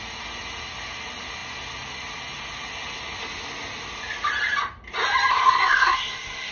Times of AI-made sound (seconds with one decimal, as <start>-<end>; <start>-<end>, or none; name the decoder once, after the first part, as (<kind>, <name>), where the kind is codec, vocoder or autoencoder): 5.3-6.5 (codec, SNAC)